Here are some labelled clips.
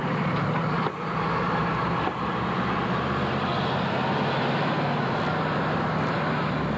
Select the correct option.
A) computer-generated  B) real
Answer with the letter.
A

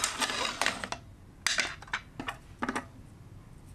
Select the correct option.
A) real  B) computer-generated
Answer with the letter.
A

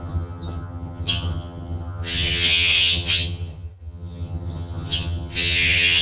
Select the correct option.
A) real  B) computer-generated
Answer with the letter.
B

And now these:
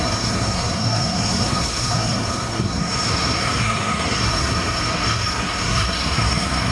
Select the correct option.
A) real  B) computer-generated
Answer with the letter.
B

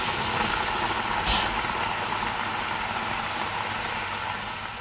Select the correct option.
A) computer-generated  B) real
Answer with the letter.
B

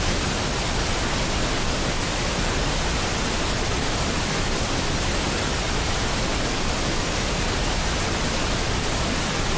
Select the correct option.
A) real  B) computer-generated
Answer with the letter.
A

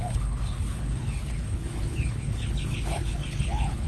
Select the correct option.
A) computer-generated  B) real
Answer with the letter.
A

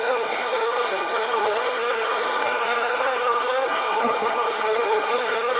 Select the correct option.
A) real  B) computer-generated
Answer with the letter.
B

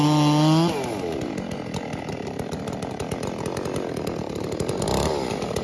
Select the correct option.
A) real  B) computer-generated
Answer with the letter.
A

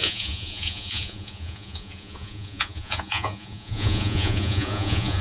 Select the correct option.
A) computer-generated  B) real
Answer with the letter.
A